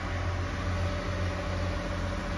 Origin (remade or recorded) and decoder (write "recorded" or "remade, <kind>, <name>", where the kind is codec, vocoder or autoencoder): recorded